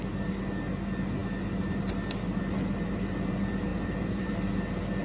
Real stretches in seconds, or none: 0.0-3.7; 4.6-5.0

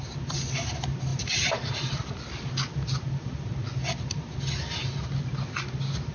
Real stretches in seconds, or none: 0.0-6.1

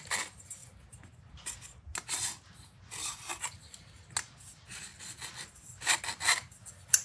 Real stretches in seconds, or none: 0.0-7.0

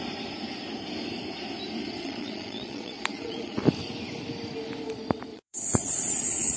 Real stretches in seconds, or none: 0.0-2.0; 3.6-5.3

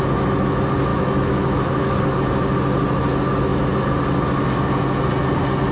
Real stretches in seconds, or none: 0.0-0.9; 2.0-5.7

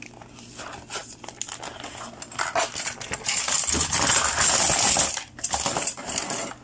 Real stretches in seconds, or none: 0.0-6.6

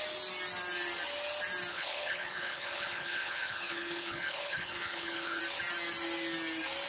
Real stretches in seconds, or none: 0.0-1.7; 5.4-6.9

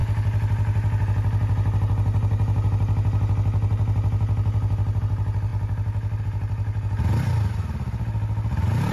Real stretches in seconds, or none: 0.0-8.9